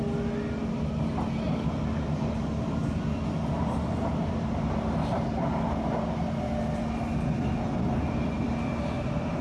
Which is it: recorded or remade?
recorded